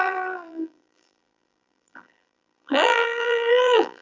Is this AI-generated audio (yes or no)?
yes